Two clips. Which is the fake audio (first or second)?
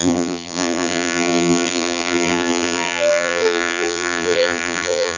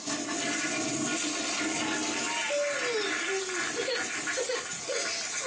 first